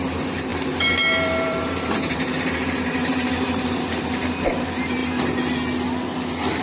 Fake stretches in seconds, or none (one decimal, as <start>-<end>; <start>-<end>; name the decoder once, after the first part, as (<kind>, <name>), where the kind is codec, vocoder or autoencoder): 0.0-5.0 (vocoder, BigVGAN v2)